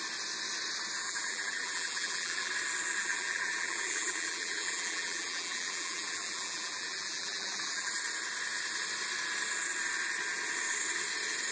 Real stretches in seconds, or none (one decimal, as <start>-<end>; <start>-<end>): 0.0-1.0; 2.5-3.0; 7.9-11.5